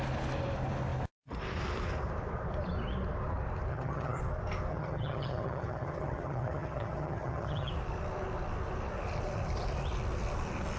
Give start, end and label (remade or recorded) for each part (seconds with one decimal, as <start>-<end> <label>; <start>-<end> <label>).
0.0-3.7 recorded; 3.7-4.2 remade; 4.2-4.7 recorded; 4.7-7.7 remade; 7.7-10.8 recorded